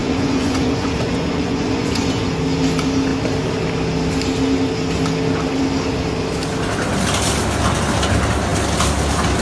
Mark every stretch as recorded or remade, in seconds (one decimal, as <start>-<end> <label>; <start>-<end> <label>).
0.0-2.3 remade; 2.3-9.4 recorded